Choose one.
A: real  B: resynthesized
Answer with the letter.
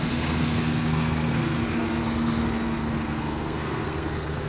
B